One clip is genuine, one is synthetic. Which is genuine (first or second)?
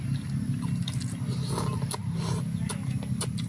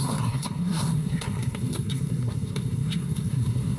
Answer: first